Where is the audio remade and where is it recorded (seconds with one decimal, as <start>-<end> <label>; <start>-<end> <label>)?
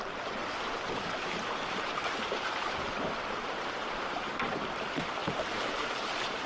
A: 0.0-0.4 remade; 0.4-1.2 recorded; 1.2-6.5 remade